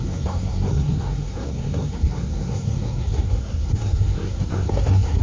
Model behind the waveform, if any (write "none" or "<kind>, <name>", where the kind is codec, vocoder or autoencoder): codec, SNAC